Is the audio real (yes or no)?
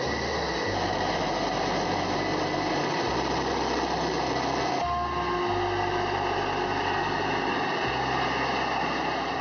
yes